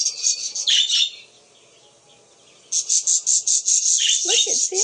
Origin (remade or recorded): recorded